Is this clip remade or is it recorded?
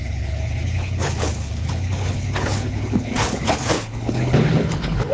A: remade